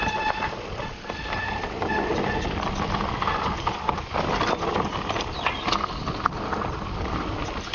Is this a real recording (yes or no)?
yes